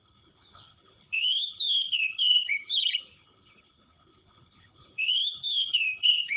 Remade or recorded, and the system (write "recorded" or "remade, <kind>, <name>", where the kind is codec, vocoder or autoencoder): remade, codec, HILCodec